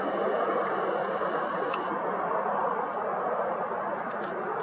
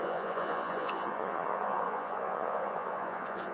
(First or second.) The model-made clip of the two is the second